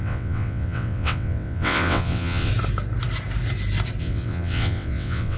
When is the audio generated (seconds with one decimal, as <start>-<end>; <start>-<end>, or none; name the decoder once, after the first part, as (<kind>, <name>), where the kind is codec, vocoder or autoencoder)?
0.0-2.5 (vocoder, WaveNeXt); 4.0-5.4